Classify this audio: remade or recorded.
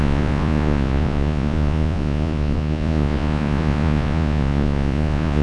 remade